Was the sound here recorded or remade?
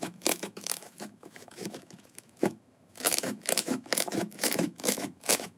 remade